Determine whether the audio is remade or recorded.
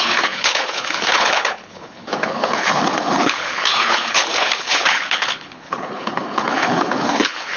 remade